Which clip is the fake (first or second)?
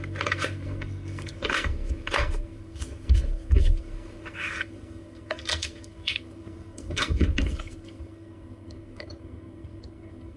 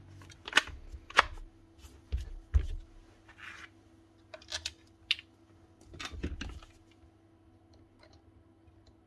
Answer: first